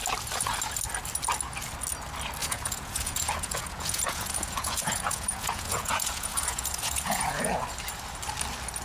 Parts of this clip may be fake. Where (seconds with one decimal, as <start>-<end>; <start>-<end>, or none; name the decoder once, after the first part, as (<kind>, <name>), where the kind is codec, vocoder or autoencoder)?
2.4-7.6 (vocoder, Vocos)